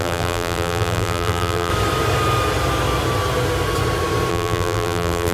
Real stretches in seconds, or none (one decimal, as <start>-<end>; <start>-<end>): 1.7-4.3